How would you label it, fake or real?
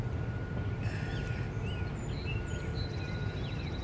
real